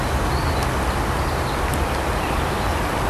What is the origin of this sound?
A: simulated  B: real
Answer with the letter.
B